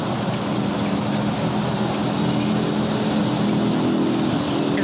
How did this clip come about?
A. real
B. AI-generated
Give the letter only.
A